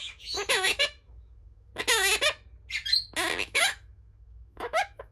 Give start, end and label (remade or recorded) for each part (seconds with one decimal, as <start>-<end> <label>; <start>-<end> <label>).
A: 0.0-1.7 remade; 1.7-3.4 recorded; 3.4-5.1 remade